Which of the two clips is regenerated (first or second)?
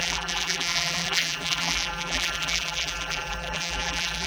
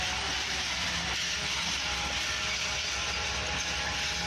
first